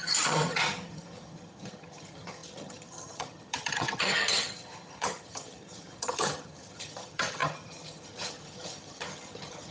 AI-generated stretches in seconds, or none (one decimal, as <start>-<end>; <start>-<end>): 0.0-9.7